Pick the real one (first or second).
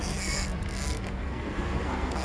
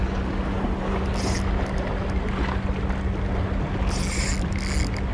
second